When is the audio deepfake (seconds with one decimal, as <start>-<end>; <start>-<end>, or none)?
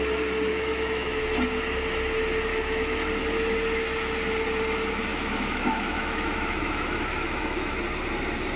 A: 0.5-1.2; 2.5-3.1; 5.1-7.8